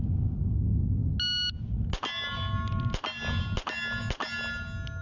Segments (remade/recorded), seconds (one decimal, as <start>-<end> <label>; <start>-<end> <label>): 0.0-5.0 recorded